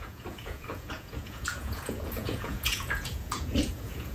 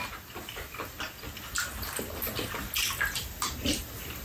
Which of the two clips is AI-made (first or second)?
first